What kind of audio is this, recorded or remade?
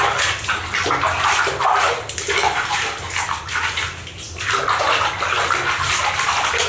recorded